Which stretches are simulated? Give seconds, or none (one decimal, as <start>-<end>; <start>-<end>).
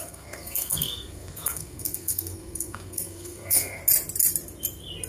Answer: 0.0-3.8